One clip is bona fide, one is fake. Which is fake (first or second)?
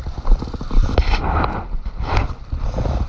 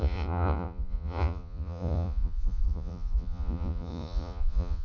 second